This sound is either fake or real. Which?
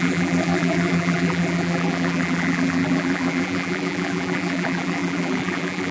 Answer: fake